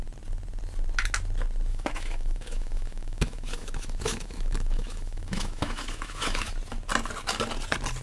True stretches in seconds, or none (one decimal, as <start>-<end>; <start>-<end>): 0.0-1.7; 6.5-8.0